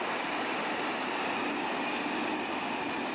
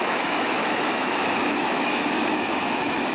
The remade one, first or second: second